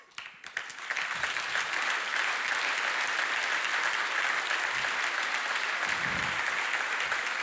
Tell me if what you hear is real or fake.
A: real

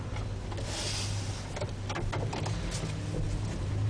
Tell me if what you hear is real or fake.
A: real